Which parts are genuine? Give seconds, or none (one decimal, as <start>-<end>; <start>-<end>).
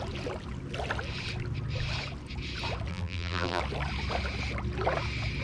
0.0-2.9; 3.6-5.4